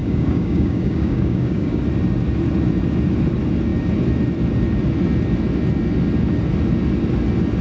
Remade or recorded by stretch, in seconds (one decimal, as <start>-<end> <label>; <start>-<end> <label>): 0.0-1.8 remade; 1.8-7.6 recorded